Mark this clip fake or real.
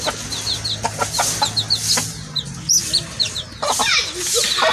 real